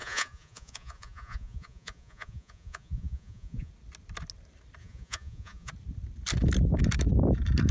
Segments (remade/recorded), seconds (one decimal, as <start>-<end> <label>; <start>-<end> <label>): 0.0-3.7 remade; 3.7-4.8 recorded; 4.8-5.7 remade; 5.7-7.7 recorded